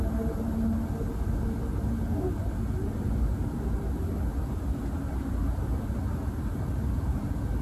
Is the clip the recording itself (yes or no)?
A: yes